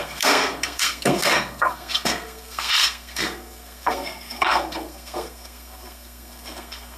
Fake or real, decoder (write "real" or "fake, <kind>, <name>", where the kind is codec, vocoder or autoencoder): fake, codec, SNAC